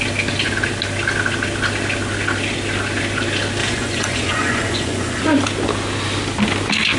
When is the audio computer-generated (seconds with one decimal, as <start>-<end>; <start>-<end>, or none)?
3.6-5.2